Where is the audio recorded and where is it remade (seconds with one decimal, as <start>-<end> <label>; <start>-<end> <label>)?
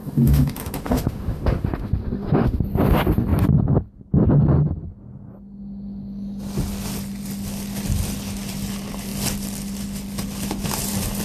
0.0-2.6 remade; 2.6-11.2 recorded